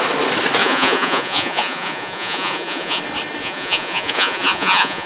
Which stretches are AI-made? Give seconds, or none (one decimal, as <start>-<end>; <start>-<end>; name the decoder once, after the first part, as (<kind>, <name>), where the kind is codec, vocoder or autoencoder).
0.6-3.0 (vocoder, Vocos); 3.4-5.1